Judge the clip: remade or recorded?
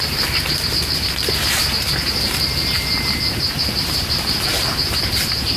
remade